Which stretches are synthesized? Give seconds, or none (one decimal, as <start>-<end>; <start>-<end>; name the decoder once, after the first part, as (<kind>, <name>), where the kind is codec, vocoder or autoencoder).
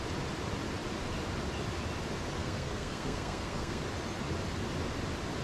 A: 2.4-3.8 (codec, SNAC)